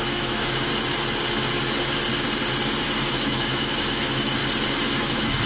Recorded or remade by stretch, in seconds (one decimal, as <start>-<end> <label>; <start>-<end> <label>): 0.0-0.7 remade; 0.7-2.8 recorded; 2.8-4.4 remade; 4.4-4.9 recorded; 4.9-5.5 remade